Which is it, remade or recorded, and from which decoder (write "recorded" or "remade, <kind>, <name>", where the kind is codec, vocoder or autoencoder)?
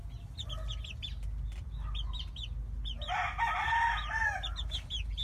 recorded